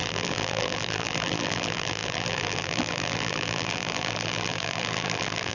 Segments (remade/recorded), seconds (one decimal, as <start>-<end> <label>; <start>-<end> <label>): 0.0-5.5 remade

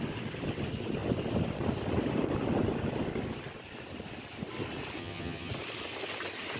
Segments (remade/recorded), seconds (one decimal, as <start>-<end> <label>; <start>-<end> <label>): 0.0-5.0 recorded; 5.0-5.5 remade; 5.5-6.6 recorded

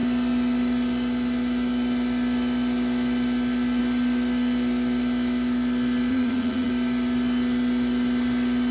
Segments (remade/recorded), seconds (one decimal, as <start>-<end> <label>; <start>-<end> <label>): 0.0-6.1 recorded; 6.1-6.7 remade; 6.7-8.7 recorded

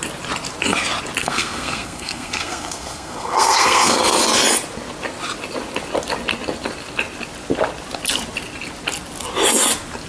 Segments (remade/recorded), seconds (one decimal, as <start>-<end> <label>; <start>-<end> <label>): 0.0-1.2 recorded; 1.2-4.0 remade; 4.0-10.1 recorded

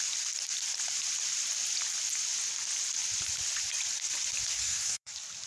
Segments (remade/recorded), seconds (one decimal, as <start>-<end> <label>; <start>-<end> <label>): 0.0-4.5 recorded; 4.5-5.1 remade; 5.1-5.5 recorded